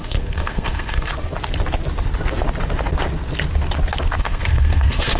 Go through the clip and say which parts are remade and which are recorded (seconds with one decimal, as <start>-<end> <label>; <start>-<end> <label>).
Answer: 0.0-1.1 remade; 1.1-4.2 recorded; 4.2-5.2 remade